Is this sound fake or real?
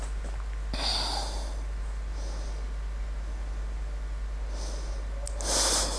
real